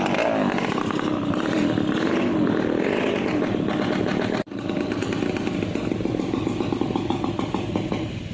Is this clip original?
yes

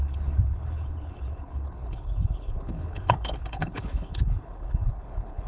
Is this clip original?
no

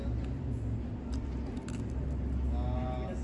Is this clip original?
yes